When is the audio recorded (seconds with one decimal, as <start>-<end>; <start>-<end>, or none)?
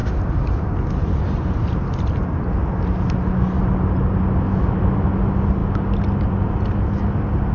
0.0-7.5